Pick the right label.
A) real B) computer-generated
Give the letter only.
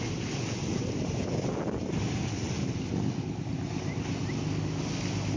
A